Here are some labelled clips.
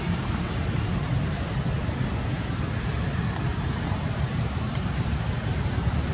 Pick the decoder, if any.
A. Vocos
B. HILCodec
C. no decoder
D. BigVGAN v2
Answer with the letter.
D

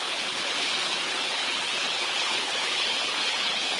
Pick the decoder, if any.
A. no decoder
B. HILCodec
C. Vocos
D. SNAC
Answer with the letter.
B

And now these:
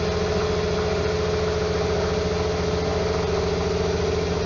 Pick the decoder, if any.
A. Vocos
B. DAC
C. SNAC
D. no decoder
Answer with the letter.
D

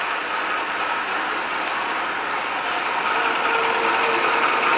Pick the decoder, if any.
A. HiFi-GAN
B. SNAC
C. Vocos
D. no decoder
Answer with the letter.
D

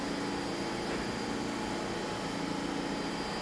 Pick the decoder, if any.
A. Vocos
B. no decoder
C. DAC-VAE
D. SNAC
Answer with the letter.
B